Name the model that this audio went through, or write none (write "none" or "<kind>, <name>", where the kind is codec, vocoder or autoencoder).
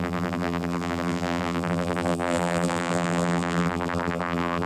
vocoder, BigVGAN v2